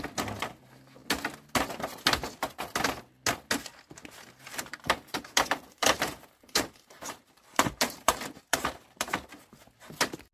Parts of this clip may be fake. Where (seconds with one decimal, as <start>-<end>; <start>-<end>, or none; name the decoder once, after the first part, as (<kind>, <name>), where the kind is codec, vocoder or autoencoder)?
4.5-9.1 (vocoder, BigVGAN v2)